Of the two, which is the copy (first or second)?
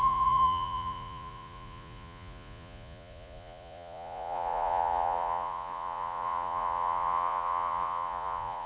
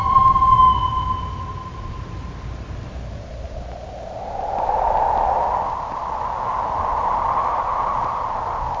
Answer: first